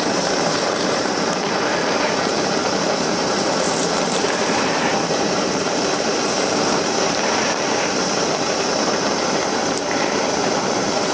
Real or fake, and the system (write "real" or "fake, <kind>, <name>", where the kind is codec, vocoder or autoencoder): fake, vocoder, BigVGAN v2